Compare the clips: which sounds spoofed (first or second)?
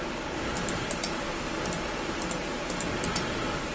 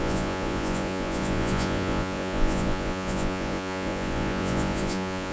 second